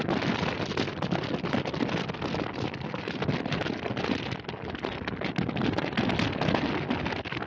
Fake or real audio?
real